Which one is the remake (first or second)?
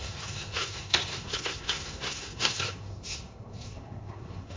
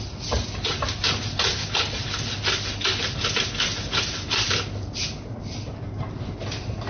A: first